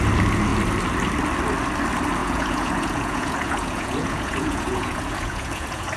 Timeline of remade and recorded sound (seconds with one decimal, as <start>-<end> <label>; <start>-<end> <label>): 0.0-2.2 recorded; 2.2-6.0 remade